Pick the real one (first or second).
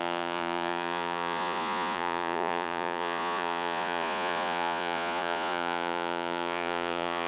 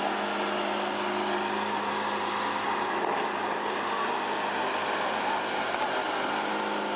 second